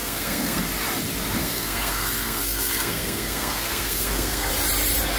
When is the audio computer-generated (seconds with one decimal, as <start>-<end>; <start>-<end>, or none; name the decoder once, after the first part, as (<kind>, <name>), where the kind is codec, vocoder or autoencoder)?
0.0-0.6 (codec, SNAC); 1.4-4.5